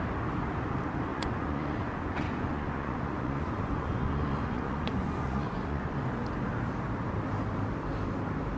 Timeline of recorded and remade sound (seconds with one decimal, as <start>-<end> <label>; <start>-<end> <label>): 0.0-1.1 recorded; 1.1-5.9 remade; 5.9-8.6 recorded